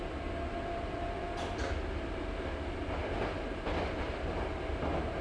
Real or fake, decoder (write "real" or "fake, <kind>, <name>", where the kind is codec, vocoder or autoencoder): real